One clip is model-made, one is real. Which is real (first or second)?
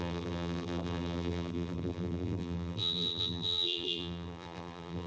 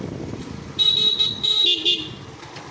second